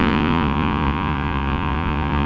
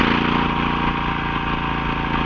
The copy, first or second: first